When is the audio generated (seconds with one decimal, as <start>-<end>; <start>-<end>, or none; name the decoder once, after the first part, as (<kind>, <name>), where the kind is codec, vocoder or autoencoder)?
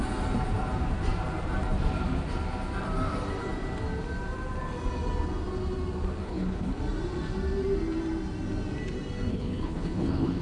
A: 6.2-6.8 (codec, HILCodec); 9.3-10.4